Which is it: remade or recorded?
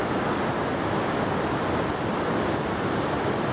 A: recorded